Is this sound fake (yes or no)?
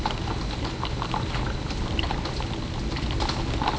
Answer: no